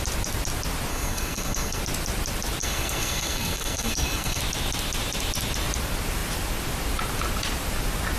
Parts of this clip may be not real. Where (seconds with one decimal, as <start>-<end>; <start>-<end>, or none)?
0.9-1.8; 2.6-4.4